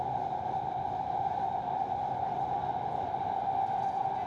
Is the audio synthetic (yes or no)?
no